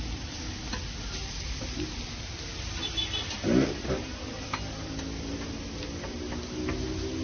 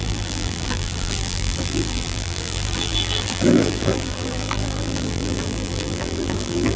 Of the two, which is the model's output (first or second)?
second